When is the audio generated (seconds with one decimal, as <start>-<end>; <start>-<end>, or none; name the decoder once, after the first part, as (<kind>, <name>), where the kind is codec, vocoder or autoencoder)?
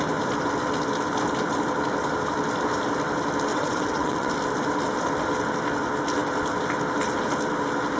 3.5-4.3 (vocoder, WaveNeXt)